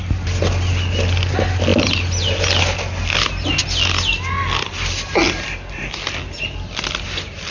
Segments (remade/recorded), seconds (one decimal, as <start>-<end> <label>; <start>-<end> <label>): 0.0-7.5 recorded